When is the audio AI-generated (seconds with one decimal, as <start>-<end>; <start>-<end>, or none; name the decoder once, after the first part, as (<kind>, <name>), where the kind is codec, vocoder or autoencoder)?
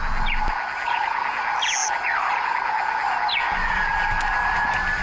1.8-2.4 (vocoder, BigVGAN v2); 4.3-5.0